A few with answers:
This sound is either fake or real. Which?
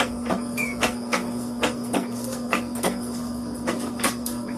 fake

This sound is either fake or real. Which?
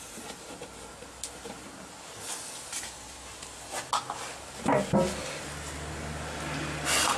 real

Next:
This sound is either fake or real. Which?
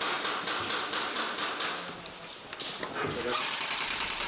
real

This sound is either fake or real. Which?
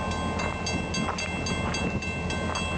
real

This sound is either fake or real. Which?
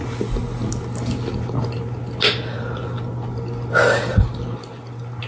real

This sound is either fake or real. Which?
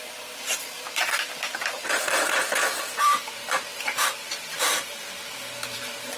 fake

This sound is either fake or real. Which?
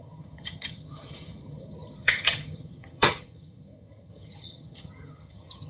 fake